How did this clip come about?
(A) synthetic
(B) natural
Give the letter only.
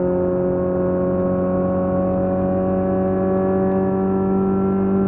B